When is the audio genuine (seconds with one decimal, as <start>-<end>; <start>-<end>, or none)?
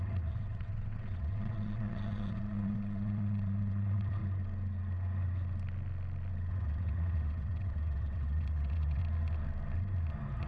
4.2-6.5; 9.0-10.5